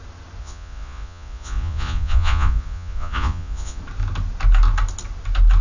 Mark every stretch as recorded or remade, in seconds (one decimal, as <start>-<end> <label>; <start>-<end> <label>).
0.0-0.4 recorded; 0.4-3.8 remade; 3.8-5.6 recorded